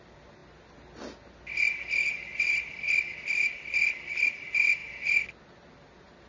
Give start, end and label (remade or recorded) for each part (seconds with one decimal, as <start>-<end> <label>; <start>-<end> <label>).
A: 0.0-6.3 recorded